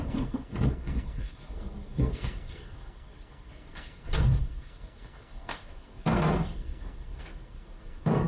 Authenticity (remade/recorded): remade